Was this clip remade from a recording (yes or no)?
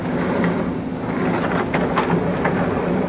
no